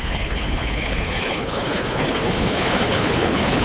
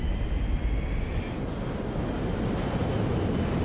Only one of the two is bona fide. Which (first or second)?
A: second